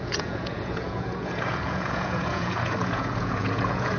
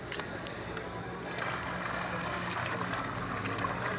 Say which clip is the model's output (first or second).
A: first